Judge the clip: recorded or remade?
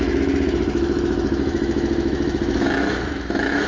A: remade